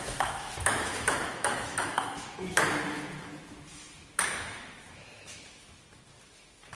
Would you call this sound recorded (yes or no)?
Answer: no